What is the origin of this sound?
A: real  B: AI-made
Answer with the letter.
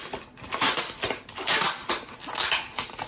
A